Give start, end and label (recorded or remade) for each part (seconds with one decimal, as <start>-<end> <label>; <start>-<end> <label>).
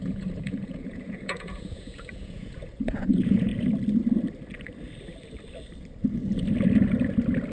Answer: 0.0-3.5 remade; 3.5-7.5 recorded